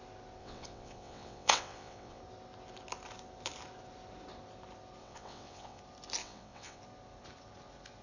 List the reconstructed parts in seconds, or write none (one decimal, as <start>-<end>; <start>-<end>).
0.4-2.2; 5.0-5.8; 6.2-6.8